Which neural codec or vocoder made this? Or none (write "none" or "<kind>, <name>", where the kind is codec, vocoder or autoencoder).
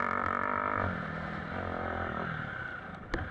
none